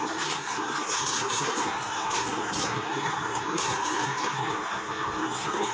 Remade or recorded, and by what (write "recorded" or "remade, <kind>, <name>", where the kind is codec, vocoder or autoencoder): remade, codec, SNAC